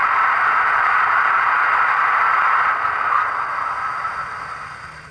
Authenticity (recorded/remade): remade